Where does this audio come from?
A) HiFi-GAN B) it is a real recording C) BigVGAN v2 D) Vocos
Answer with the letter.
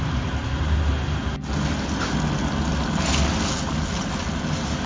B